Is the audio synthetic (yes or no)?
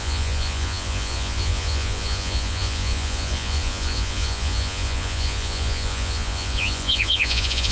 yes